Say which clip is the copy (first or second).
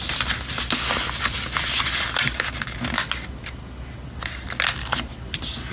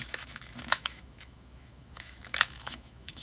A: second